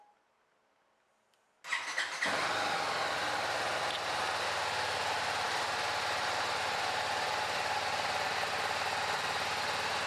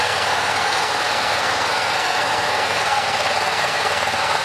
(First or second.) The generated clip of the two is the second